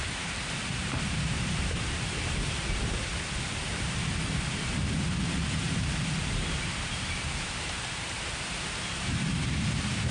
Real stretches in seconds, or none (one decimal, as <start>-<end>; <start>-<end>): 3.1-3.7

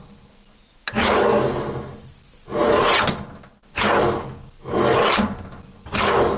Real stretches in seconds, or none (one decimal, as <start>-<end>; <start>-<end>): 0.0-6.4

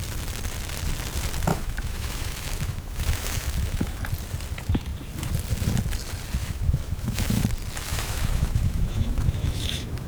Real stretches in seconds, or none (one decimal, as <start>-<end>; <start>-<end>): 0.0-1.5; 4.0-6.4; 7.4-7.9

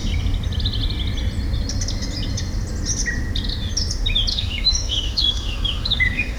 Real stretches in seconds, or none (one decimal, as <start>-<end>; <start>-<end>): 0.0-4.3